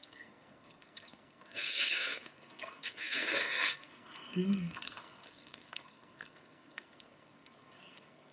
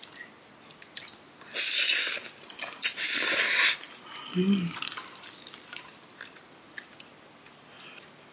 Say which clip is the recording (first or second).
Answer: second